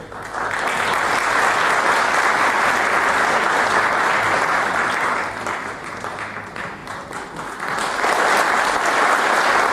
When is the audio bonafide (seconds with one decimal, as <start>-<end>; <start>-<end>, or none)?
0.0-9.7